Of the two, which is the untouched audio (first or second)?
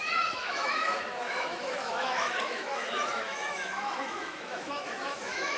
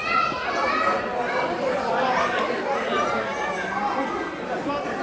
second